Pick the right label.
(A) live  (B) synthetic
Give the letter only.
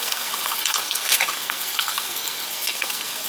B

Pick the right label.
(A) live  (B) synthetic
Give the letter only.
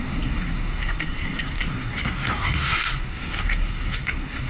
B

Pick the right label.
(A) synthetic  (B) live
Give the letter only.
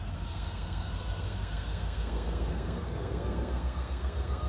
A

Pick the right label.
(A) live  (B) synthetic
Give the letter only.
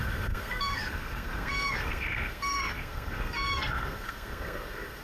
B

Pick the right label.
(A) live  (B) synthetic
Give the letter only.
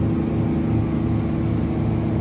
A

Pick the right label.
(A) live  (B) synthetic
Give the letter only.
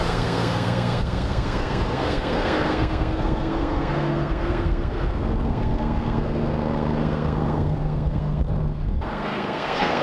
B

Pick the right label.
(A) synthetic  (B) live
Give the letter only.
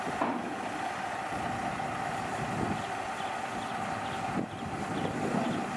B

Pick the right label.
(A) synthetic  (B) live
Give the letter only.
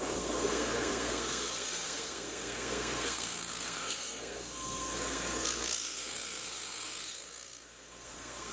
A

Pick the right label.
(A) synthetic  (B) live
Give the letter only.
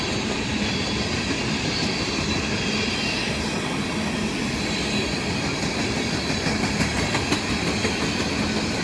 B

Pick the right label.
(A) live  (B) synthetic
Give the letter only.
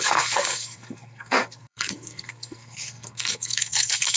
B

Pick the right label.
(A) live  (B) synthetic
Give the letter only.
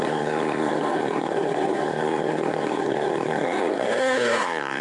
B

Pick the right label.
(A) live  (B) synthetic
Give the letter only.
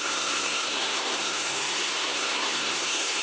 B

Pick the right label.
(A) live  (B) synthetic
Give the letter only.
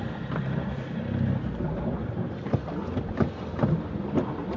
A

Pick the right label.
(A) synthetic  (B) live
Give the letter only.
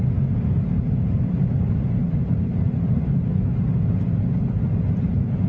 B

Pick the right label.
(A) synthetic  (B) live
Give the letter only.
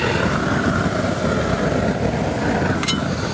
B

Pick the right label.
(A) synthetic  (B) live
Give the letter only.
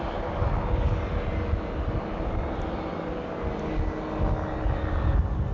B